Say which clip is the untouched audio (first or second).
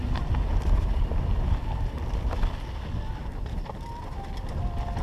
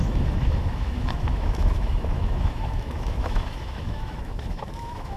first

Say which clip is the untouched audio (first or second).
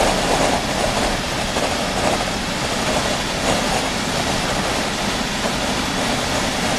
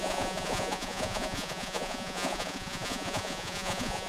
first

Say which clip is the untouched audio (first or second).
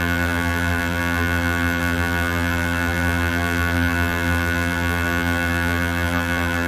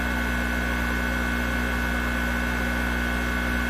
second